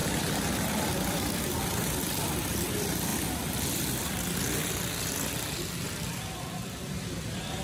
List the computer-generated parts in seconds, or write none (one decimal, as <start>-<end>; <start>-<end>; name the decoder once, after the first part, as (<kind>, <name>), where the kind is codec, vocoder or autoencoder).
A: none